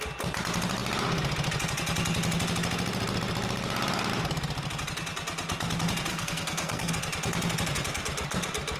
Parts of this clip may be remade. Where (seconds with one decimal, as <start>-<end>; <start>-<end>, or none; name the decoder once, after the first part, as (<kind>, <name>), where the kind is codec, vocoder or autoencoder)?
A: 6.1-6.9 (codec, SNAC)